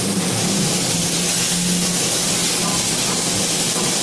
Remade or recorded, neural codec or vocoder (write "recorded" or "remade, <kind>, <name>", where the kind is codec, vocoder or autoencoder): recorded